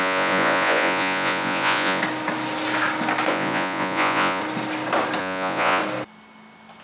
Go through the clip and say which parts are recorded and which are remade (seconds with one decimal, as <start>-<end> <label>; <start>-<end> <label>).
0.0-2.0 remade; 2.0-3.3 recorded; 3.3-4.4 remade; 4.4-5.2 recorded; 5.2-5.8 remade; 5.8-6.8 recorded